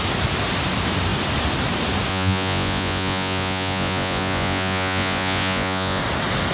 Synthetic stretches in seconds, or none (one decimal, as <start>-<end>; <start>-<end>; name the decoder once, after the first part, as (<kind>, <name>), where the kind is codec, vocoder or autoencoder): 2.1-6.0 (vocoder, Vocos)

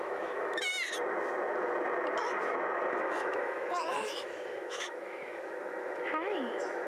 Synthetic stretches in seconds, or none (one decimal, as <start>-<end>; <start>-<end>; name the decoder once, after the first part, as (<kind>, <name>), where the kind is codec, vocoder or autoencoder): 0.0-0.7 (autoencoder, DAC-VAE); 2.9-6.9

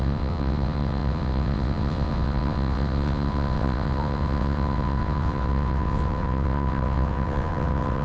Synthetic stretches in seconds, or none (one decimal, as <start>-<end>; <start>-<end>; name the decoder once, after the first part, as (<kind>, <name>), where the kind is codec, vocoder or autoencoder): 0.0-8.0 (vocoder, WaveNeXt)

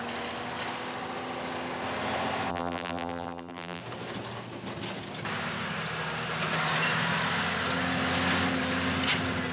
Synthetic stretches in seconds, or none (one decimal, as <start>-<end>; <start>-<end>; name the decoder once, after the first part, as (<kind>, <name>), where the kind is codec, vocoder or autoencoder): 2.5-3.8 (vocoder, BigVGAN v2)

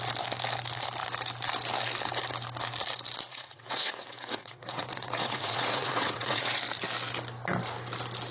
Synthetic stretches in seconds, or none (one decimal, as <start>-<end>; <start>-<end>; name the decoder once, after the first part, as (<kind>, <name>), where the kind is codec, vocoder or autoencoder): 3.3-6.6 (vocoder, WaveNeXt)